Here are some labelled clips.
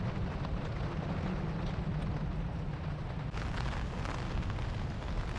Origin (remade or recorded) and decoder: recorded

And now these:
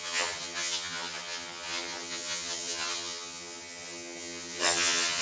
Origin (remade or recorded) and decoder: remade, vocoder, HiFi-GAN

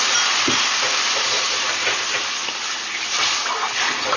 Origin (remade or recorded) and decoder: recorded